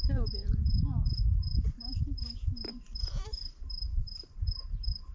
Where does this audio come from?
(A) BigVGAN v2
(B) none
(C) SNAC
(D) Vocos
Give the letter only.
A